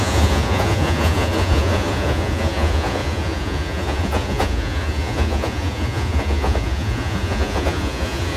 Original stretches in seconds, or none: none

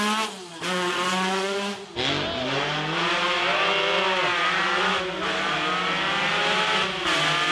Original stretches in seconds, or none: 0.0-0.5; 1.9-7.5

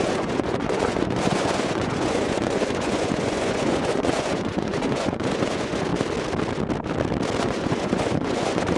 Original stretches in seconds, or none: 5.9-7.4

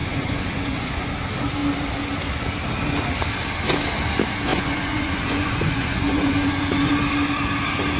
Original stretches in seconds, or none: 1.1-4.5; 6.9-8.0

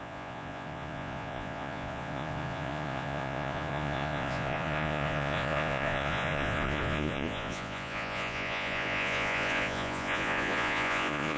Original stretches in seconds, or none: none

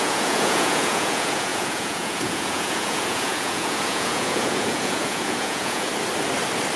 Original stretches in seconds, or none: 5.9-6.8